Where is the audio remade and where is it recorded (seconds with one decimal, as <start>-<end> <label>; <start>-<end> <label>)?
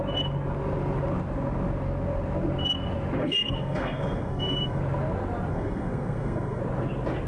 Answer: 0.0-3.2 recorded; 3.2-4.8 remade; 4.8-5.5 recorded; 5.5-6.6 remade; 6.6-7.3 recorded